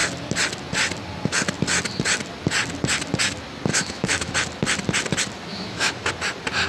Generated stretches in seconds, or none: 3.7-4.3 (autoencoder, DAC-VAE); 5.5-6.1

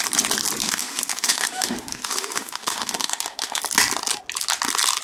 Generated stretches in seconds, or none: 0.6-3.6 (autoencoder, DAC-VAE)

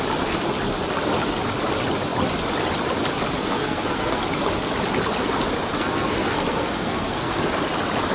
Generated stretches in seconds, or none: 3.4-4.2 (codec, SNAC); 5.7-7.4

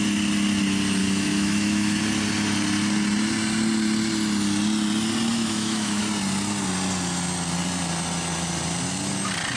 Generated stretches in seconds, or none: 1.0-2.0 (autoencoder, DAC-VAE); 5.3-6.0

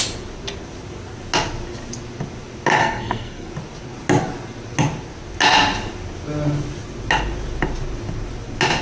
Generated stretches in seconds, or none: 2.8-3.5 (codec, SNAC)

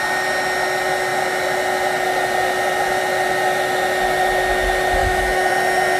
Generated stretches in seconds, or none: 5.0-5.5 (autoencoder, DAC-VAE)

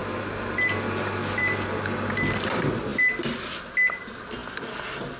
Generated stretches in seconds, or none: none